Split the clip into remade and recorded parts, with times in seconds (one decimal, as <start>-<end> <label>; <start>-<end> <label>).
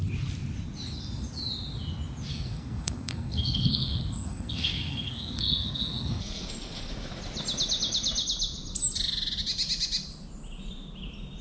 0.0-2.3 recorded; 2.3-6.9 remade; 6.9-11.4 recorded